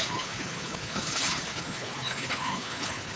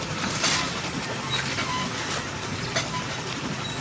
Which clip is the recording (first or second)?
second